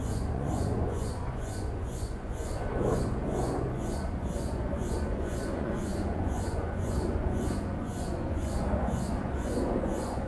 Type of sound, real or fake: fake